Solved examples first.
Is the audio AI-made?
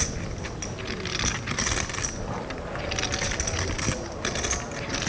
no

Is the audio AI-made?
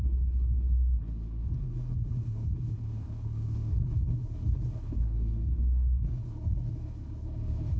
yes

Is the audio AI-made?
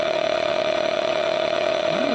yes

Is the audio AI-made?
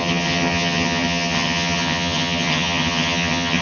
yes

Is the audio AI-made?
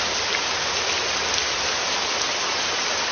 no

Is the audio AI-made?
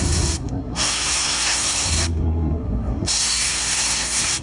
yes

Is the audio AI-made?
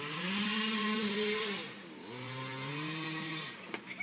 yes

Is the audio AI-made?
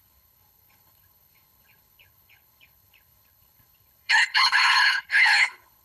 yes